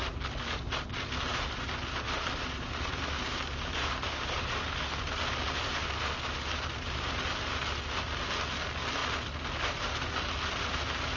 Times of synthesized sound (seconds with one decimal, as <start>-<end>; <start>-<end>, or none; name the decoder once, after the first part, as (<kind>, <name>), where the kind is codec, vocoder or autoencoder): 1.3-4.7 (vocoder, BigVGAN v2)